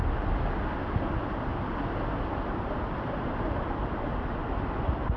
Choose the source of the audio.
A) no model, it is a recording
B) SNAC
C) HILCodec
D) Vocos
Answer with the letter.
A